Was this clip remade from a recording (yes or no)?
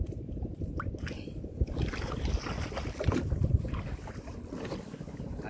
no